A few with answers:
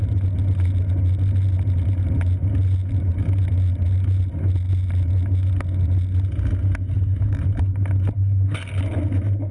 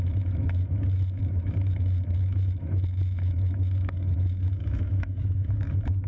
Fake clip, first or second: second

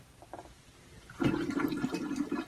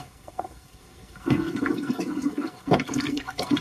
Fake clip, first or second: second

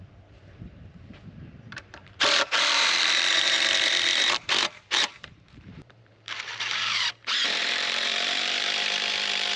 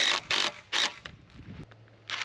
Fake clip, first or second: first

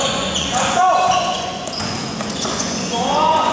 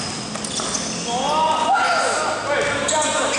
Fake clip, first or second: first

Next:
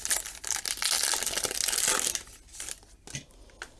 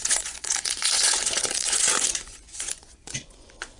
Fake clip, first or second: second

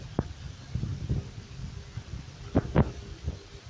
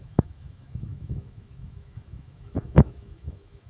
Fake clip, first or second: second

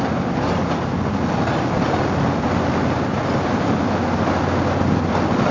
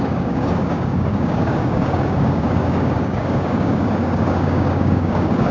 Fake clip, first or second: second